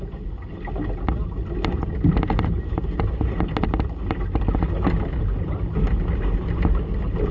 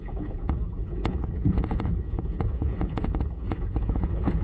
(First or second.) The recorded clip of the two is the first